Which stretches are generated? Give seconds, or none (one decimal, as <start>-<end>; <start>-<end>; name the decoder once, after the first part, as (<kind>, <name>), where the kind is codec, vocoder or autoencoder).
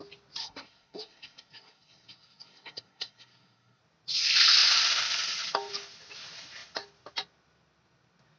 0.4-3.8 (codec, SNAC)